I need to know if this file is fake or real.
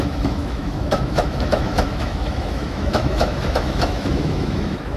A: fake